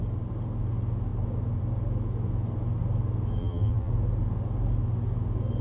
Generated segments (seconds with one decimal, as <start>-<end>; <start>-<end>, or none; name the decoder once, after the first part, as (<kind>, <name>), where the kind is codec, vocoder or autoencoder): 3.4-3.9 (vocoder, BigVGAN v2)